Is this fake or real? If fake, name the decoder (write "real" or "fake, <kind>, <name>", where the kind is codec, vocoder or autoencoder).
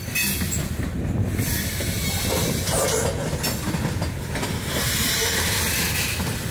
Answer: real